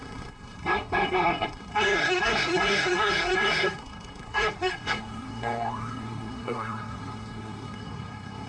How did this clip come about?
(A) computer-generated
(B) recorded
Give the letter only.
A